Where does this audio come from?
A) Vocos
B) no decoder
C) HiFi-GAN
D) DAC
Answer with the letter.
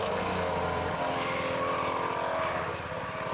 B